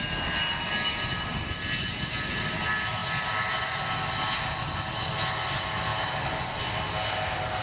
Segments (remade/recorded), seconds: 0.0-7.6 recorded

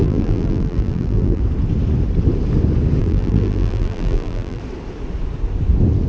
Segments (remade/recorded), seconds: 0.0-1.4 remade; 1.4-3.0 recorded; 3.0-4.6 remade; 4.6-6.1 recorded

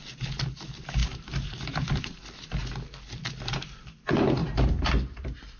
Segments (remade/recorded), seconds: 0.0-1.0 recorded; 1.0-2.2 remade; 2.2-4.4 recorded; 4.4-5.6 remade

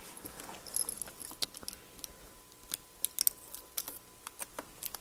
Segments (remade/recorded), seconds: 0.0-5.0 recorded

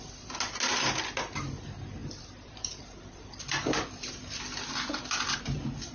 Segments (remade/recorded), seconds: 0.0-2.0 recorded; 2.0-4.1 remade; 4.1-5.9 recorded

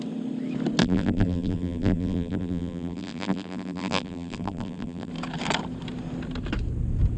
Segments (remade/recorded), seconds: 0.0-0.8 recorded; 0.8-5.1 remade; 5.1-7.2 recorded

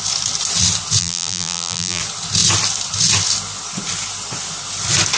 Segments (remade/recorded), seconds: 0.0-1.0 recorded; 1.0-2.0 remade; 2.0-5.2 recorded